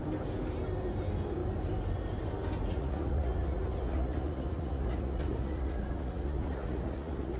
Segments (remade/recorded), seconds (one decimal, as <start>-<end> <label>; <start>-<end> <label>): 0.0-2.7 recorded; 2.7-7.4 remade